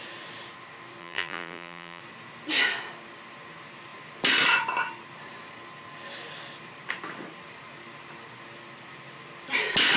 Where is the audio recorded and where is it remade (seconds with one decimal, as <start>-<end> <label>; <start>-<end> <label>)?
0.0-1.0 recorded; 1.0-2.0 remade; 2.0-10.0 recorded